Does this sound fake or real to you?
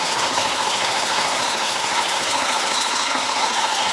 fake